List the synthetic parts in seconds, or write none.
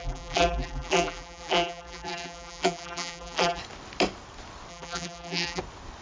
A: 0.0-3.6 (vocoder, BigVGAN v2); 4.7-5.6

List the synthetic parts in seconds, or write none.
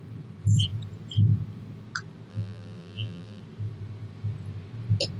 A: 2.3-3.4 (vocoder, BigVGAN v2)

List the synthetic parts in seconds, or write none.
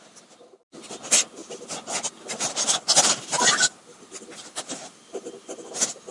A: none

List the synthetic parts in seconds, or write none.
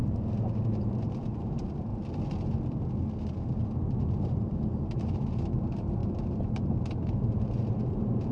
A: 0.0-1.9 (vocoder, BigVGAN v2); 4.0-8.3